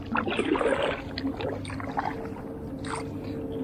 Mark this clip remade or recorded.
recorded